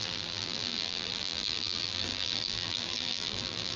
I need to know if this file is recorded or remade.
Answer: remade